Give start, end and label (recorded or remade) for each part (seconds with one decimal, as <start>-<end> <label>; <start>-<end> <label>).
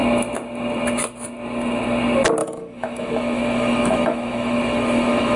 0.0-2.4 recorded; 2.4-5.4 remade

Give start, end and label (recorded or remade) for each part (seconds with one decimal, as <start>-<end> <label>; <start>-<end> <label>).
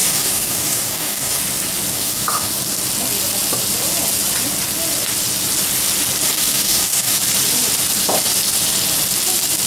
0.0-1.4 remade; 1.4-1.9 recorded; 1.9-2.5 remade; 2.5-6.3 recorded; 6.3-7.2 remade; 7.2-9.7 recorded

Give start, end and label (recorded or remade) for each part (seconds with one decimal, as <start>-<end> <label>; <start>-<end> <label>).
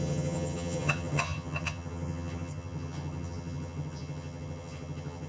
0.0-5.3 remade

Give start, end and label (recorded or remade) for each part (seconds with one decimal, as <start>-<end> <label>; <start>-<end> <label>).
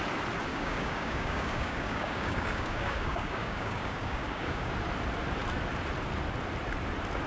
0.0-0.5 recorded; 0.5-4.7 remade; 4.7-7.3 recorded